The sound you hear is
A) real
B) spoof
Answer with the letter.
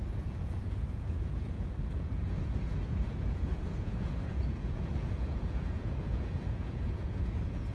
B